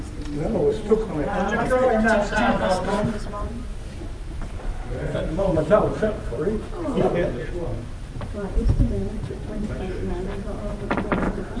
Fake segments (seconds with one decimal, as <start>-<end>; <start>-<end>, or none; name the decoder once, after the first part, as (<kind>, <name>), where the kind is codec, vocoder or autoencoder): 0.0-7.1 (vocoder, BigVGAN v2); 7.9-11.6